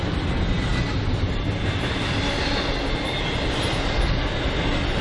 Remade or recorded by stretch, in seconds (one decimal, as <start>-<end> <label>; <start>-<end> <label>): 0.0-5.0 recorded